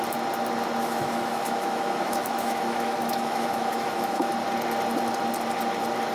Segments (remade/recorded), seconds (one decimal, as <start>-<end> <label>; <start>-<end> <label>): 0.0-0.8 recorded; 0.8-4.3 remade; 4.3-6.1 recorded